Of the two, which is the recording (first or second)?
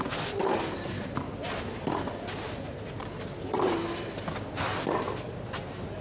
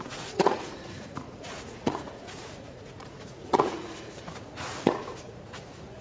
first